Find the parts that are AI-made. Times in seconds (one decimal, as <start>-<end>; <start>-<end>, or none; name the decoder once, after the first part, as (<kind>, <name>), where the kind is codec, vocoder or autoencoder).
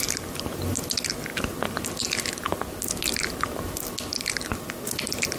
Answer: none